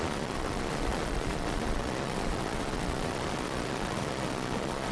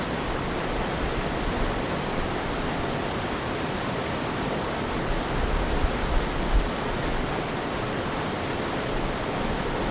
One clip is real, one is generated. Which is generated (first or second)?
first